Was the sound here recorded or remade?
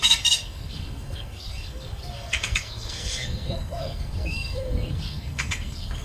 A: remade